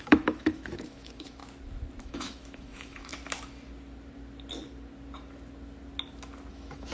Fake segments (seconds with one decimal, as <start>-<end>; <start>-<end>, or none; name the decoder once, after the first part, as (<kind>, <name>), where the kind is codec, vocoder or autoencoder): 0.0-1.4 (autoencoder, DAC-VAE); 2.0-3.1; 6.5-6.9